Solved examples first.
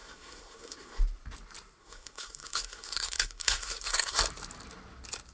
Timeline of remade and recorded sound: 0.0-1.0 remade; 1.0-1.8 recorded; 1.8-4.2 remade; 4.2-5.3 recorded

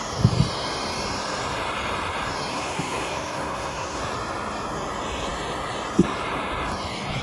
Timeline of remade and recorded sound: 0.0-2.5 recorded; 2.5-4.0 remade; 4.0-7.2 recorded

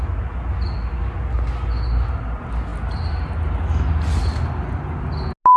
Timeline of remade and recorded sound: 0.0-5.6 recorded

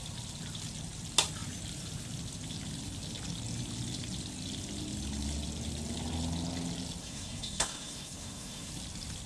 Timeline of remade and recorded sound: 0.0-7.0 recorded; 7.0-8.7 remade; 8.7-9.3 recorded

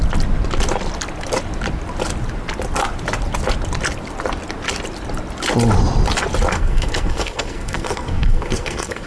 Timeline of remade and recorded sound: 0.0-6.5 recorded; 6.5-9.1 remade